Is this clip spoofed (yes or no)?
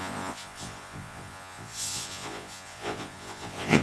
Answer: yes